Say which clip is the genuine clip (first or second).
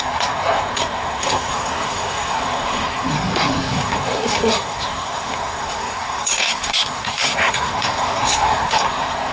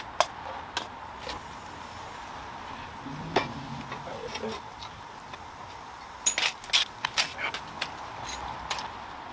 second